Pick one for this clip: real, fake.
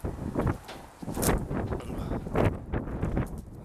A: real